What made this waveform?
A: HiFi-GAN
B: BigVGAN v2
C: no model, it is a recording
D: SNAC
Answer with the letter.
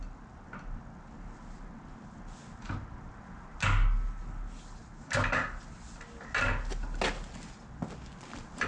C